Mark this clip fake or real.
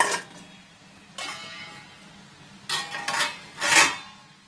real